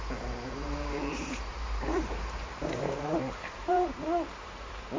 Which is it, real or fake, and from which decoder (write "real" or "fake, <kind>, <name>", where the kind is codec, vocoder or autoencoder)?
fake, vocoder, BigVGAN v2